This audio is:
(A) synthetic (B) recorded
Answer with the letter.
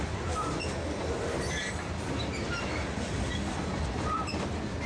B